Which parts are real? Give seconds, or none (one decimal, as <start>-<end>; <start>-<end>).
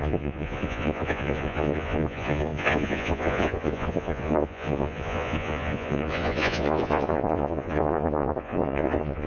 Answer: none